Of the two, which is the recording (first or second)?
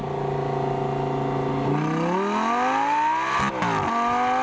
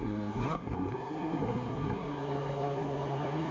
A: first